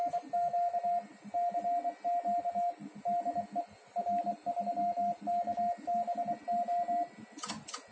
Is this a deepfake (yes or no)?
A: no